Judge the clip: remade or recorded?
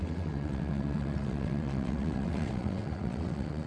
remade